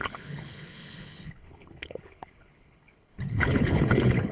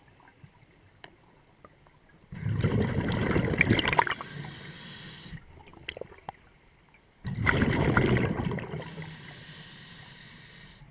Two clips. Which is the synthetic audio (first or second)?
first